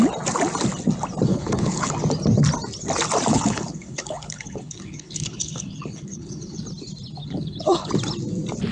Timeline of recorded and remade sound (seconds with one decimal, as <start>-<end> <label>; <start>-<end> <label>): 0.0-1.3 recorded; 1.3-1.9 remade; 1.9-3.3 recorded; 3.3-6.6 remade; 6.6-7.2 recorded; 7.2-7.9 remade; 7.9-8.7 recorded